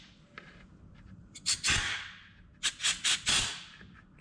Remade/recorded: recorded